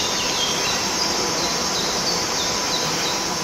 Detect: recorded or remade remade